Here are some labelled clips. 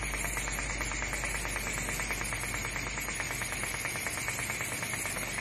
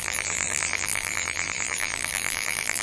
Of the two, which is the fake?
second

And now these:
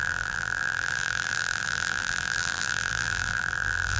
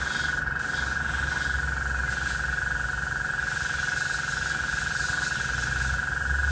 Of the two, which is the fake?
first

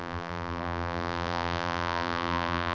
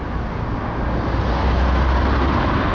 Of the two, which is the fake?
first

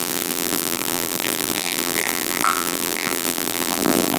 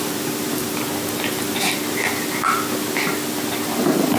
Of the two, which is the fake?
first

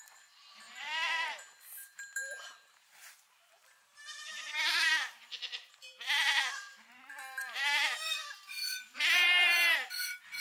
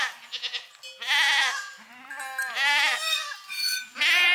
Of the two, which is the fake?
first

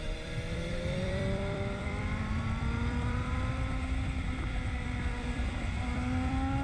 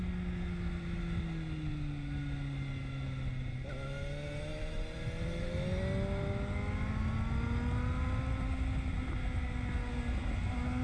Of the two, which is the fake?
first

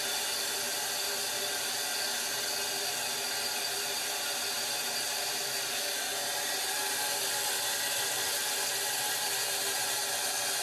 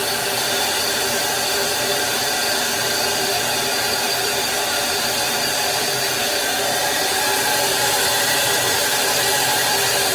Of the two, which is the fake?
second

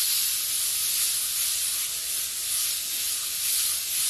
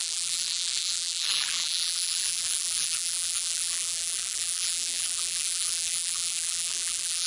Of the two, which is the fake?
second